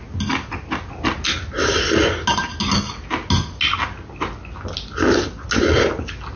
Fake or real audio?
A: real